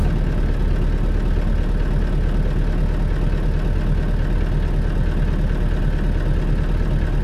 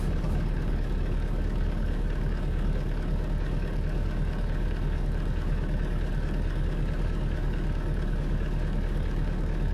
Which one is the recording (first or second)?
first